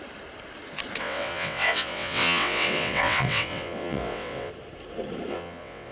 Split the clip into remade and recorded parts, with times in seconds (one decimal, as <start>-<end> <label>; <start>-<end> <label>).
0.0-1.0 recorded; 1.0-4.5 remade; 4.5-5.3 recorded; 5.3-5.9 remade